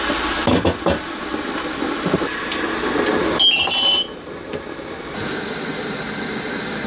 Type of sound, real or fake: real